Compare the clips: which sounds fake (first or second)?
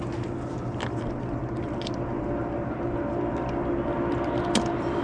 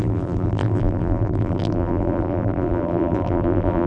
second